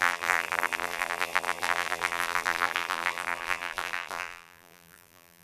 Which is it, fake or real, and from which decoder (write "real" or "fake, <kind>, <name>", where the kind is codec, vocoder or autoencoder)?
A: fake, vocoder, BigVGAN v2